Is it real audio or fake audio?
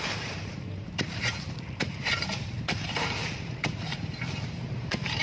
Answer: fake